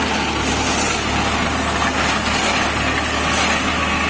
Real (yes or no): yes